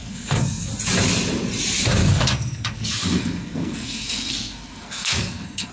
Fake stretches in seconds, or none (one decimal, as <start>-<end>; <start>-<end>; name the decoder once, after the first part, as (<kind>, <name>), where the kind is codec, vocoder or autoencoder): 0.0-0.7 (codec, SNAC); 2.0-5.7